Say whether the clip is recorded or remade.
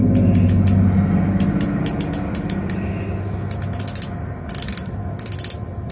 recorded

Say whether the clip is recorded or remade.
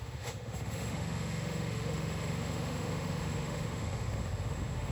remade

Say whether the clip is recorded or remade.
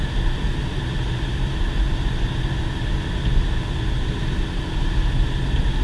recorded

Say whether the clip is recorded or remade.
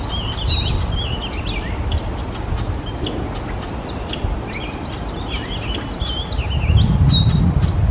recorded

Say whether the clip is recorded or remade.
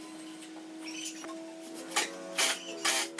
recorded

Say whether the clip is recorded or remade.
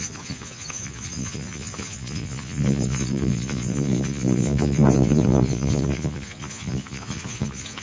remade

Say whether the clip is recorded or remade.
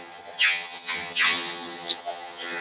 remade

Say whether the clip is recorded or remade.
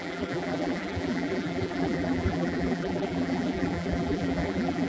remade